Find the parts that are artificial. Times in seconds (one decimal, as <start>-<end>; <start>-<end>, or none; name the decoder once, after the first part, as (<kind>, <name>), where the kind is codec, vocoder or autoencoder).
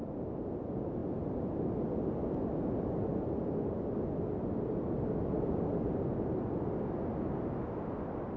none